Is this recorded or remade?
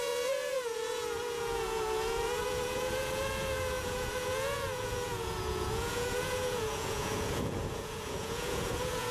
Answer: remade